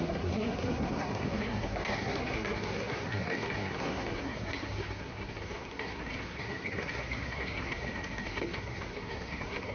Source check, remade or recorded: remade